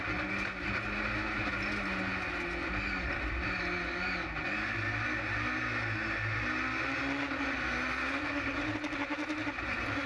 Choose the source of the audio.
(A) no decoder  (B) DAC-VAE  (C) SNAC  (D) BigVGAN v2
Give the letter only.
A